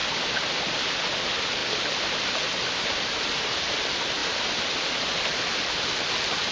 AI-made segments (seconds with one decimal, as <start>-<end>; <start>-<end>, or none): none